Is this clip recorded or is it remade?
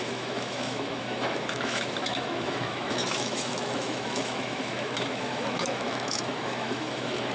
remade